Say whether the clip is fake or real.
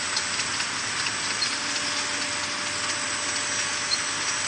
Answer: real